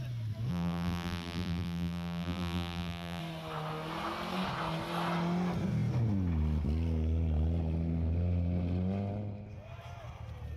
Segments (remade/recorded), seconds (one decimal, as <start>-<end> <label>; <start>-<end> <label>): 0.0-0.5 recorded; 0.5-3.2 remade; 3.2-10.6 recorded